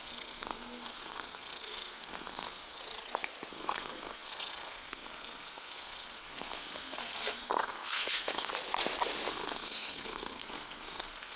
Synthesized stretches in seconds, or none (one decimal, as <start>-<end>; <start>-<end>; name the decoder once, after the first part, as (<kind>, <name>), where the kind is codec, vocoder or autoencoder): 0.0-2.8 (codec, SNAC); 3.5-8.5; 9.3-11.4